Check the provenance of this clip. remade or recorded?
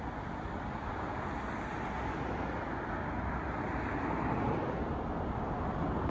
recorded